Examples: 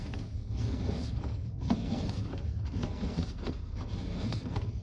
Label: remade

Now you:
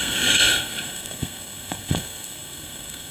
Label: remade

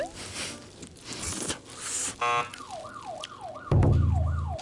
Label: recorded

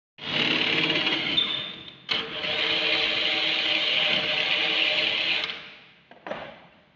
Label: recorded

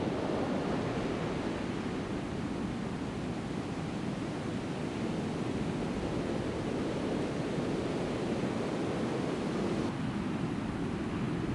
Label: recorded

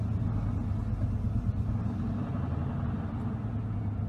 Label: recorded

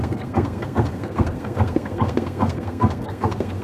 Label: remade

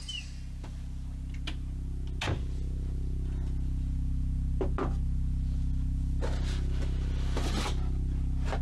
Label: recorded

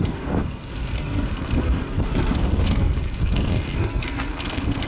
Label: remade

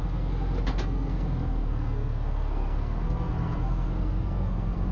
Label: remade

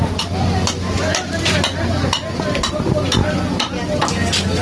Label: recorded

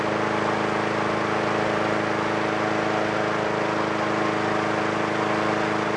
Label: recorded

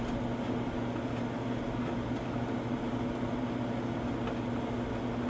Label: recorded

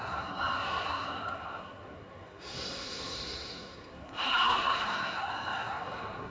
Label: remade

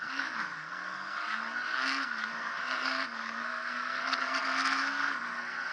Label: remade